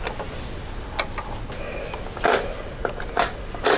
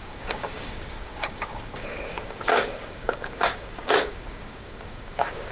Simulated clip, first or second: second